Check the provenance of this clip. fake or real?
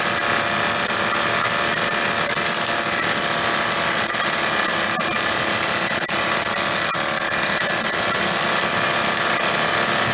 real